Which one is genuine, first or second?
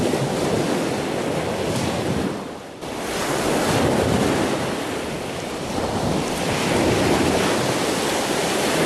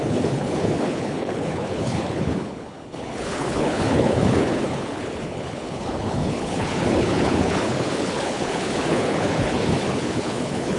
first